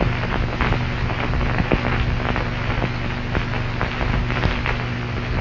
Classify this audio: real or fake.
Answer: real